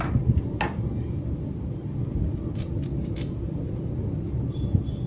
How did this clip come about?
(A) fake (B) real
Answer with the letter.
B